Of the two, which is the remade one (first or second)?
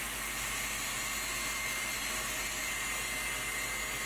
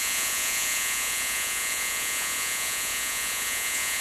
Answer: second